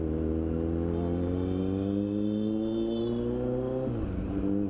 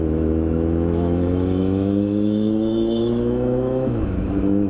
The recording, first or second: first